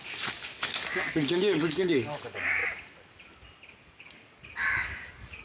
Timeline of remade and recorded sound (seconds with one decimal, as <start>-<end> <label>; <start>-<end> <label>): 0.0-2.6 remade; 2.6-3.8 recorded; 3.8-5.4 remade